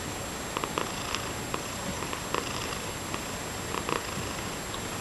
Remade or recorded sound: recorded